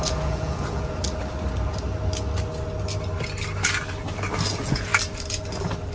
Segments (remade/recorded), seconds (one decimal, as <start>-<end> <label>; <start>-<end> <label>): 0.0-1.0 remade; 1.0-4.5 recorded; 4.5-4.9 remade; 4.9-5.9 recorded